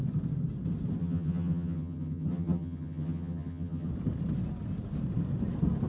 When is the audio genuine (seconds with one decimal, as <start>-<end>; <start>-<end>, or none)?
0.0-1.0; 3.9-5.9